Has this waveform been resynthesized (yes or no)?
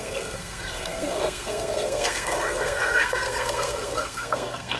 yes